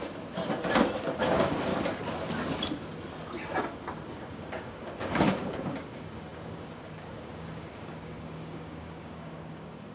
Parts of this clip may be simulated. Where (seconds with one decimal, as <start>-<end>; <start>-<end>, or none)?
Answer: 0.0-0.4; 1.0-1.7; 4.1-9.9